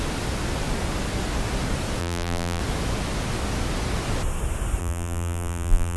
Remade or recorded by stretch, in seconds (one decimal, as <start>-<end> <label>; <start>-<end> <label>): 0.0-2.0 recorded; 2.0-2.6 remade; 2.6-4.8 recorded; 4.8-6.0 remade